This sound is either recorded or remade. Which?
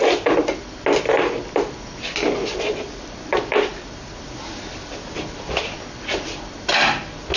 recorded